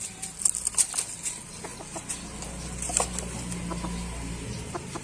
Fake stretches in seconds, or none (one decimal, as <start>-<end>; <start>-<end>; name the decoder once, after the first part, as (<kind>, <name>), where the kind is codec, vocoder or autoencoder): none